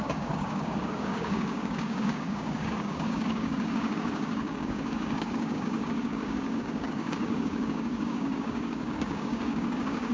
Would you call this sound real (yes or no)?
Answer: no